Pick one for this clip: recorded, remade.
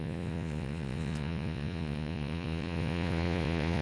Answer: remade